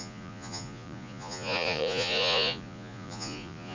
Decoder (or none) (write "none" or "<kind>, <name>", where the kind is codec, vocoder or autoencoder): vocoder, Vocos